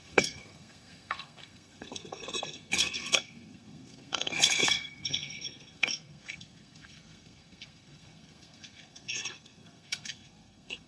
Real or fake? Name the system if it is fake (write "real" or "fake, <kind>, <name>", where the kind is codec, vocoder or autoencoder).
fake, codec, SNAC